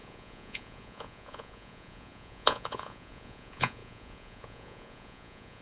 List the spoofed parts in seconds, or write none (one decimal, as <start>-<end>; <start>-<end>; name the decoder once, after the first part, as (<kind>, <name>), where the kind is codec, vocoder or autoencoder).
0.0-5.6 (vocoder, Vocos)